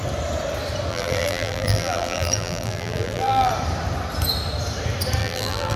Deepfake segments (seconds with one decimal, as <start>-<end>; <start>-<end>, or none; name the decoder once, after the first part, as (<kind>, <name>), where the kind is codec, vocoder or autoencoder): 0.9-3.5 (vocoder, BigVGAN v2); 5.2-5.8